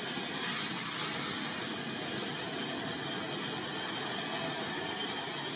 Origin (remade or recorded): recorded